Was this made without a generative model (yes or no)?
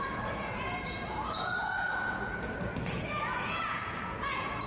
no